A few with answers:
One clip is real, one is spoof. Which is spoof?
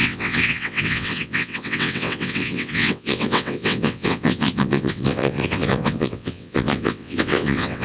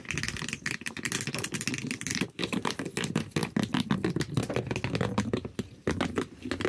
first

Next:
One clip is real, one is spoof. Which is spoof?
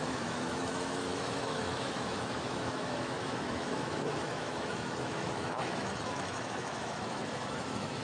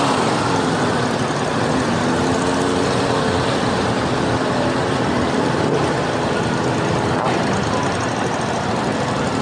first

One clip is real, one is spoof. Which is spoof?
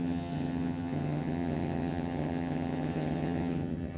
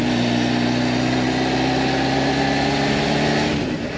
first